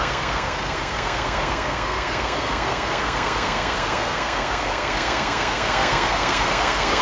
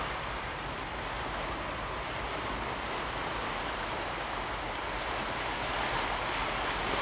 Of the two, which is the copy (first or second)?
first